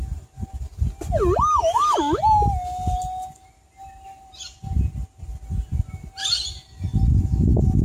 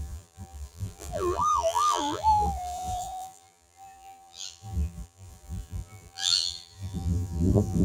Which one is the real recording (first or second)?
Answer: first